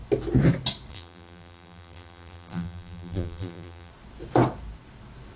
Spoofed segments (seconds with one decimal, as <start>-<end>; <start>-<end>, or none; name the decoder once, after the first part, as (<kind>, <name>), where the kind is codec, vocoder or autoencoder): 0.9-3.9 (vocoder, BigVGAN v2)